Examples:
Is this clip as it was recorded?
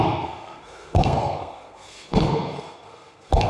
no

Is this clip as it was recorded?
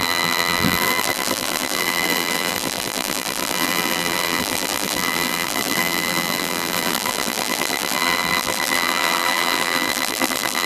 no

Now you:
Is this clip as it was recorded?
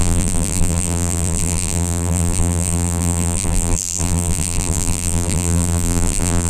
no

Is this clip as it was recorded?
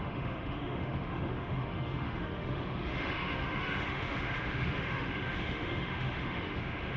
no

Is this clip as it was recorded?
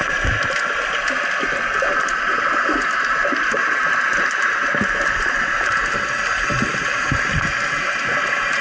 yes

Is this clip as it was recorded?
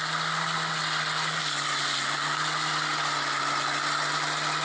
yes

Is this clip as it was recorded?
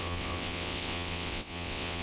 no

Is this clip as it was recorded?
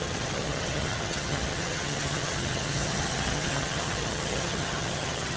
no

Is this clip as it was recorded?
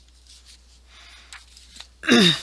yes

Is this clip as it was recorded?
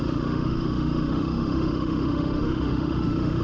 no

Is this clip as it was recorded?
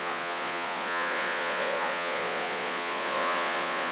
no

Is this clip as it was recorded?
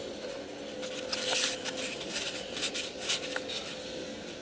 yes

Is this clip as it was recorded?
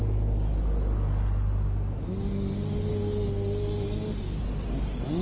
yes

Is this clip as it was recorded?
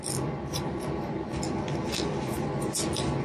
yes